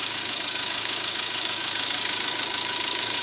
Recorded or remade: remade